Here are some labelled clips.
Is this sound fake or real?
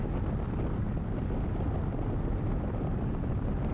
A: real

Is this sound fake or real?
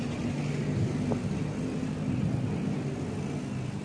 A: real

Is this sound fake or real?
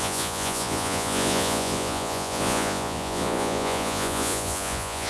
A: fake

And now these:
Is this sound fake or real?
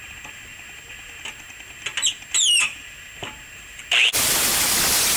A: real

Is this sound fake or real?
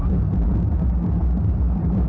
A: real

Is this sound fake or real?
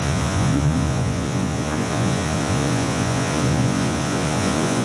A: fake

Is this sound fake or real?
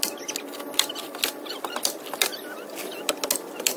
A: real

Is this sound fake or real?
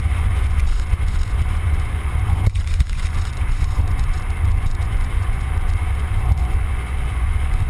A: fake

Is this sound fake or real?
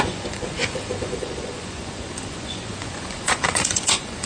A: fake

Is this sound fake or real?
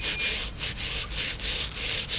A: real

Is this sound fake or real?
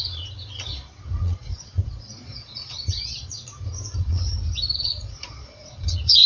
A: fake